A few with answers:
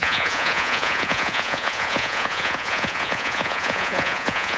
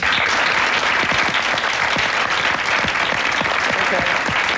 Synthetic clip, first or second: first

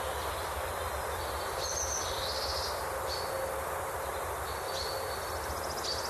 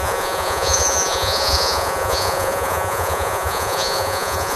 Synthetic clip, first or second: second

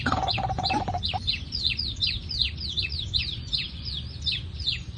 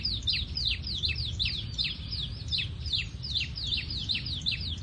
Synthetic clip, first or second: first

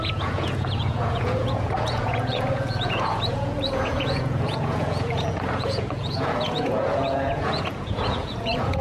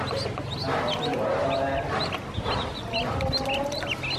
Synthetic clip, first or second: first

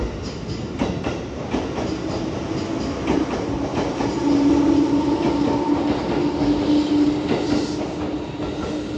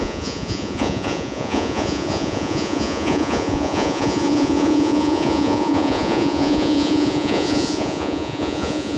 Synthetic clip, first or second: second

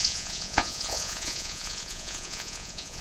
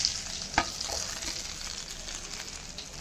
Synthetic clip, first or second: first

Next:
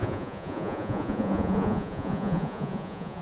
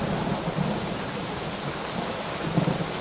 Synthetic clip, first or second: first